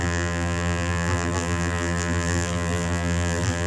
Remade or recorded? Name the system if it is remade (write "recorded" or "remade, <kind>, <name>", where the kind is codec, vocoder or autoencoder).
remade, vocoder, BigVGAN v2